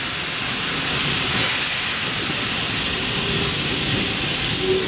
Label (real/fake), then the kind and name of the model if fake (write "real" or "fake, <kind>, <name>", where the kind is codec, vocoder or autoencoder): real